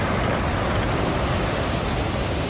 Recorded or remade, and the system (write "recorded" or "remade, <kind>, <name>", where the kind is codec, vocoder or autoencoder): recorded